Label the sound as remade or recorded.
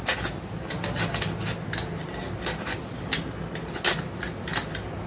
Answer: recorded